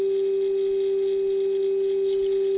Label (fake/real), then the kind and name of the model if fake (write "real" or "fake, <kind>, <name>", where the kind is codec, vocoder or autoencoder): real